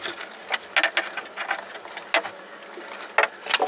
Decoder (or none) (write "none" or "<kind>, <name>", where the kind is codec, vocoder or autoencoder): none